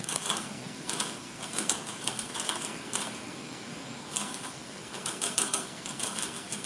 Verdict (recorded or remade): remade